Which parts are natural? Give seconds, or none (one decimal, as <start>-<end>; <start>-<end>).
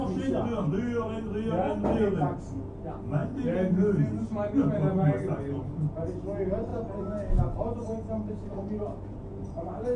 0.0-10.0